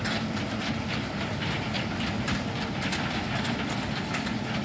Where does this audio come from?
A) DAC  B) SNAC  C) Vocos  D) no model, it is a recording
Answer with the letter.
D